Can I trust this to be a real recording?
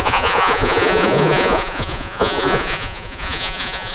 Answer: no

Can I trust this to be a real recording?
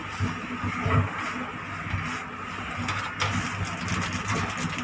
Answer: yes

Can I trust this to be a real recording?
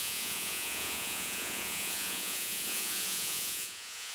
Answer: no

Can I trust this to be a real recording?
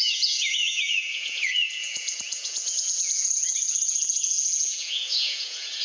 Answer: no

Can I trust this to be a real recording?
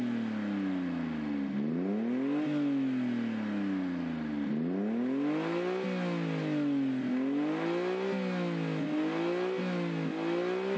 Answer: yes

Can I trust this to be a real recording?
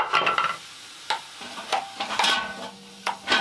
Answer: yes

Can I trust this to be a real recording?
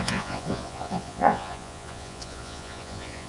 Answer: no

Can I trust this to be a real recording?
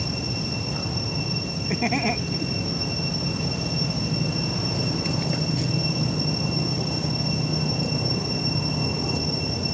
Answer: yes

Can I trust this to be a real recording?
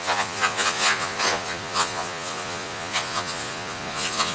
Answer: no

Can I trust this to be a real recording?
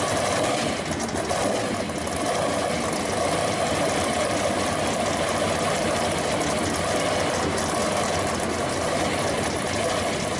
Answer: yes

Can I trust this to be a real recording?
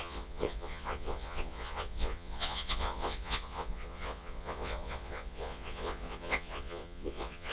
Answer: no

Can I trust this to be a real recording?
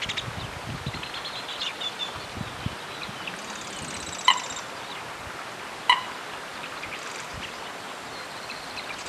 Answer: yes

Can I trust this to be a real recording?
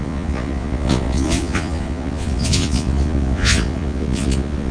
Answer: no